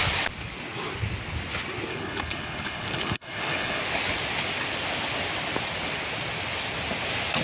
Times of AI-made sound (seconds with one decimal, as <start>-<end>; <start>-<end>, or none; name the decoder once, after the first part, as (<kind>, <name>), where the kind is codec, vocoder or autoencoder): 1.9-3.8 (codec, HILCodec)